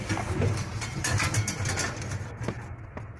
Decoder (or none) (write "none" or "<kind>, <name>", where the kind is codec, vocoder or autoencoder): none